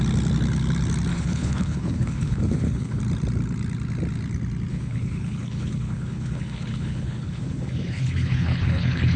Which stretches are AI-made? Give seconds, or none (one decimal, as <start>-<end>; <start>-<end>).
1.1-3.0; 4.7-9.2